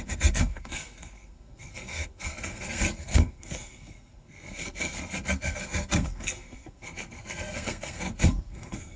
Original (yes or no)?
no